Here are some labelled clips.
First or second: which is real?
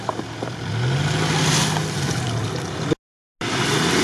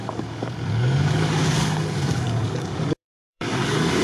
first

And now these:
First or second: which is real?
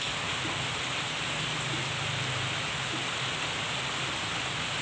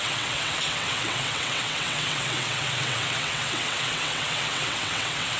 first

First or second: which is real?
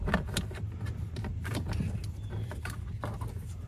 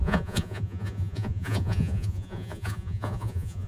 first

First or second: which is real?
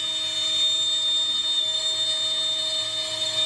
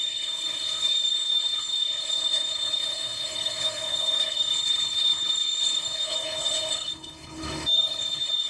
first